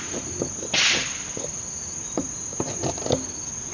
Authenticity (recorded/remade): recorded